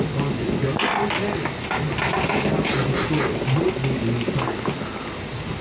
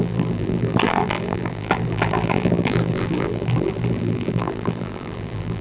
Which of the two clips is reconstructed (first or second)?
second